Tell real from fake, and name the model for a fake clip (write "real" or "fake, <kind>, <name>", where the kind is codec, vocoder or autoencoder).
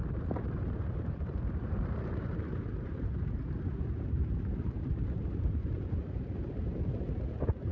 fake, vocoder, BigVGAN v2